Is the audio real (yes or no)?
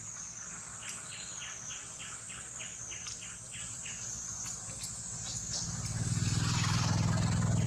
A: yes